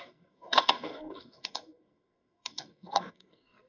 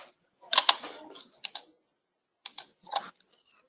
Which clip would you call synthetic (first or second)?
first